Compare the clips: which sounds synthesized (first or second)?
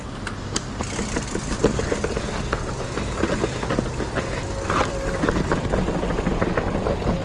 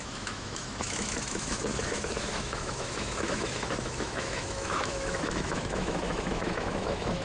second